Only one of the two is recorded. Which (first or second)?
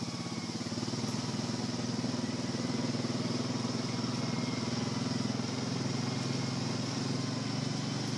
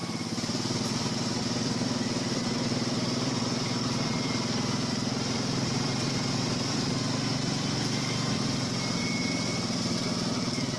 first